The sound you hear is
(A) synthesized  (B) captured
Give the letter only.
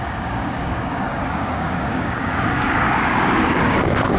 A